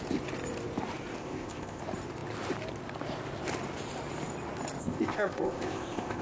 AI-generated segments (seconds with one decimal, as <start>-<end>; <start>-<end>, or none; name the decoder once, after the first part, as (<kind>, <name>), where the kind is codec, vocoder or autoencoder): 1.2-1.8 (codec, ZipCodec); 4.8-6.2